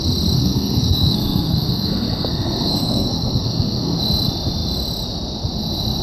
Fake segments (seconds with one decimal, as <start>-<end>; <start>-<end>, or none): 0.4-4.0